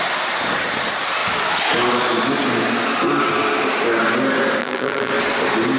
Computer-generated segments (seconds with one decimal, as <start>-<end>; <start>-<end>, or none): 4.6-5.1